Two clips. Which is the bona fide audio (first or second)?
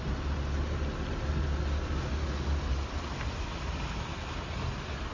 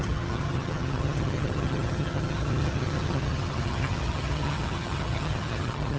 first